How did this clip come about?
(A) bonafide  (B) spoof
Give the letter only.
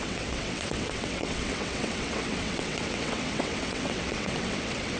B